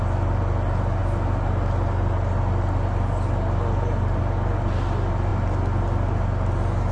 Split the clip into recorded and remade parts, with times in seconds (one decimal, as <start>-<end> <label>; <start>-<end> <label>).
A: 0.0-6.9 recorded